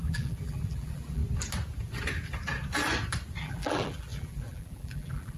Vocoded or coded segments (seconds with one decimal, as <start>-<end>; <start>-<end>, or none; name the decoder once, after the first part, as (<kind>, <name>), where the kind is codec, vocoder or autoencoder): 0.0-1.2 (vocoder, BigVGAN v2); 3.4-5.4